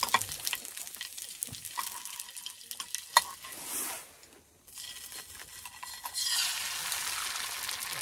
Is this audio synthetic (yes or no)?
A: no